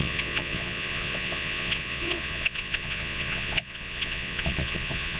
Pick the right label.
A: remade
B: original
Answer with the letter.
A